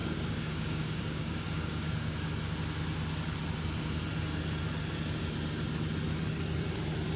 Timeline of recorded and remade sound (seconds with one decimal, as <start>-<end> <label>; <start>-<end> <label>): 0.0-2.3 remade; 2.3-7.2 recorded